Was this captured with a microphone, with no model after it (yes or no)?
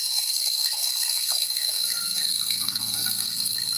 no